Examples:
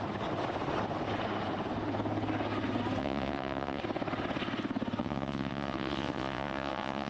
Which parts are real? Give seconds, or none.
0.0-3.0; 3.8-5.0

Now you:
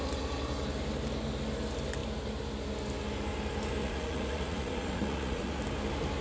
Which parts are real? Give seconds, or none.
0.0-3.8; 5.6-6.2

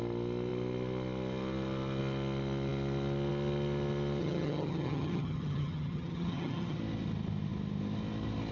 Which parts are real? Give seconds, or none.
0.0-4.2; 6.8-8.5

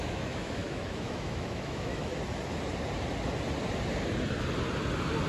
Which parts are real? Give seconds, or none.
2.1-5.3